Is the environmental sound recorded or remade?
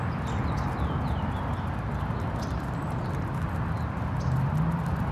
recorded